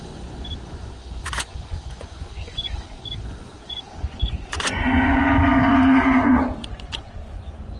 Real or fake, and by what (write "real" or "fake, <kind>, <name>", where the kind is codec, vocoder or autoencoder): fake, vocoder, Vocos